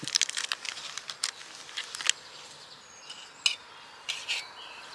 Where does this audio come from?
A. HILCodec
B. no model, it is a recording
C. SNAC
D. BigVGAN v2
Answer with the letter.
B